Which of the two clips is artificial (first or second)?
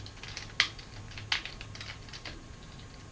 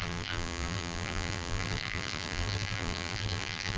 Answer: second